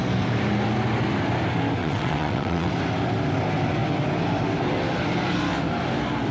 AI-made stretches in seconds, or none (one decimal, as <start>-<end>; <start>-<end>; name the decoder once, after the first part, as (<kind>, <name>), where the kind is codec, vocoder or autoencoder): 1.8-2.7 (vocoder, WaveNeXt)